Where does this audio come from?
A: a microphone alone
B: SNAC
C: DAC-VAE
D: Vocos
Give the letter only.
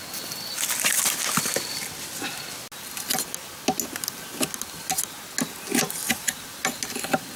A